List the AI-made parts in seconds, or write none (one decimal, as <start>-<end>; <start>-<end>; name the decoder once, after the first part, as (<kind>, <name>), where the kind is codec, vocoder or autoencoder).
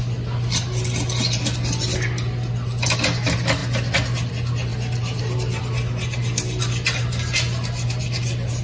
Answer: none